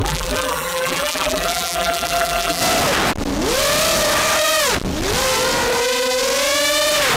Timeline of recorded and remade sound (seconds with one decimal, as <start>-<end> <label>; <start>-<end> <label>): 0.0-2.6 remade; 2.6-7.2 recorded